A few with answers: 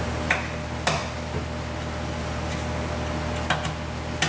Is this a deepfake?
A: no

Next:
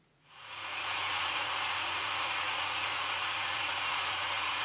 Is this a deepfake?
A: yes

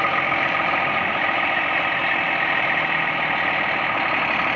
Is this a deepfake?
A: no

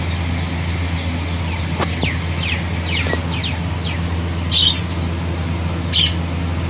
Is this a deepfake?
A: no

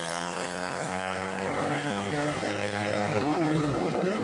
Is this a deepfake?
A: yes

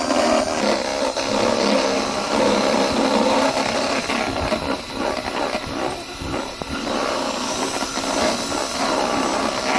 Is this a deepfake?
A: no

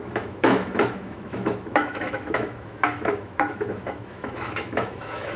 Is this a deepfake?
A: yes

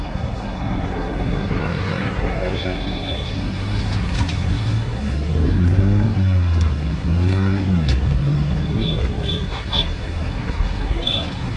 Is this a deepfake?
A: yes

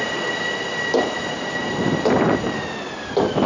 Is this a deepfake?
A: no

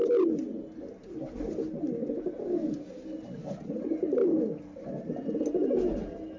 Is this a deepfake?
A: no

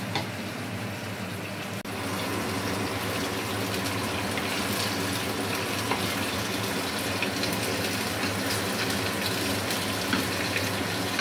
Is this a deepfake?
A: no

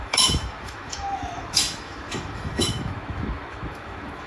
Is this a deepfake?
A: yes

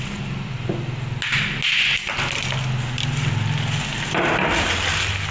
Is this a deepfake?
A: no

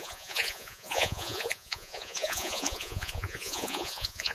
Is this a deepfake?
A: yes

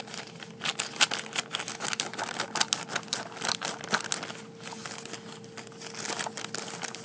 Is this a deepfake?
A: no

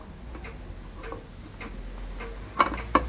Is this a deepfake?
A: no